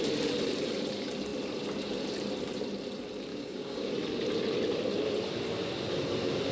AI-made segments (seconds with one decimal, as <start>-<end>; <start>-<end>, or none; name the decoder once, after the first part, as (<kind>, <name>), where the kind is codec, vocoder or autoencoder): 3.3-3.9 (codec, DAC)